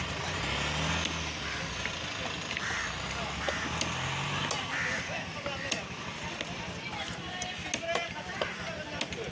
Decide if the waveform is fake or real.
real